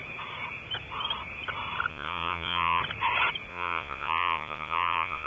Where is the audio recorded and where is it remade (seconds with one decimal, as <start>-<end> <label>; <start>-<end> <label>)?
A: 0.0-1.9 recorded; 1.9-2.8 remade; 2.8-3.5 recorded; 3.5-5.3 remade